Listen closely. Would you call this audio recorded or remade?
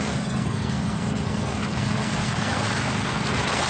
remade